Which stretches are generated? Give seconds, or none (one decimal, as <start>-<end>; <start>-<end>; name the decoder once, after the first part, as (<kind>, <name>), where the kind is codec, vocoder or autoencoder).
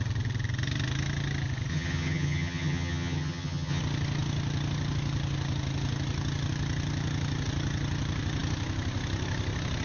1.7-3.8 (vocoder, HiFi-GAN)